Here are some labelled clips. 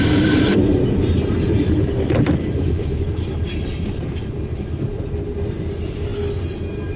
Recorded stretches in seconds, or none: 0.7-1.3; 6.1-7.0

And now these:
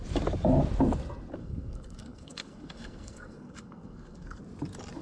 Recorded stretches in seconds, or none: 0.0-1.4; 4.4-5.0

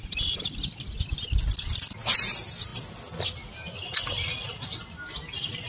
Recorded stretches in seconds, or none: 0.0-5.7